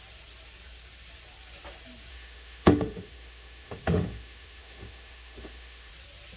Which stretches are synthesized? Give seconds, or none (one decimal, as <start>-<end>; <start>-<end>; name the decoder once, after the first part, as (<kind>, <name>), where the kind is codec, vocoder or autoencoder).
2.1-5.9 (autoencoder, DAC-VAE)